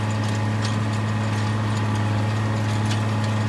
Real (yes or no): yes